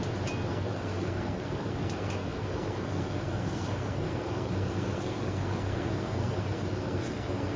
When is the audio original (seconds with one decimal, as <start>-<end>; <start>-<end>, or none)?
0.0-0.5